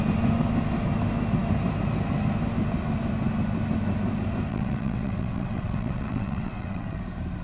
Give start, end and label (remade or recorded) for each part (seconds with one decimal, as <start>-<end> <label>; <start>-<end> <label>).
0.0-4.5 recorded; 4.5-7.0 remade; 7.0-7.4 recorded